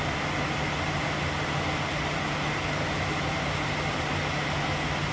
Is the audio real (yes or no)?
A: yes